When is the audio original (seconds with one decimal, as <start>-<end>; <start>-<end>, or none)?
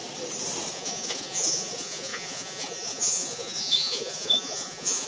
0.0-0.7